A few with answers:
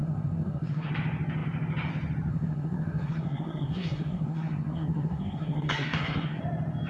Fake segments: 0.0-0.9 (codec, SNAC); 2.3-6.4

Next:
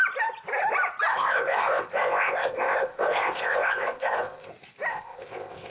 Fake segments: 1.1-4.5 (codec, ZipCodec); 4.9-5.7